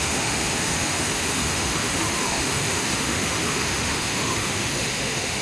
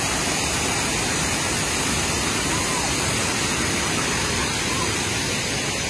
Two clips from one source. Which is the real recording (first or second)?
second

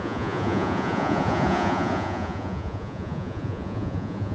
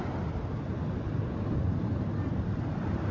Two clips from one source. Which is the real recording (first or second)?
second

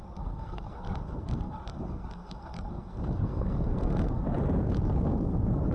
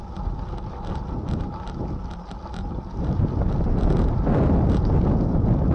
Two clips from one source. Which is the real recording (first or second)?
second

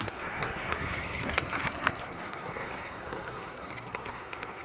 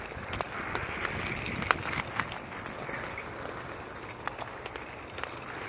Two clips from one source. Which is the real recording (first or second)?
second